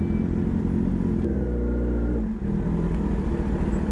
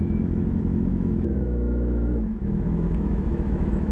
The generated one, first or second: second